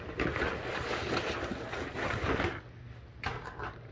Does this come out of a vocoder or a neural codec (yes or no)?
no